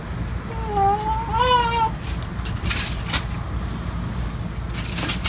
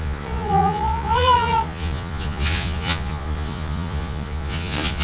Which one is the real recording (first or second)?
first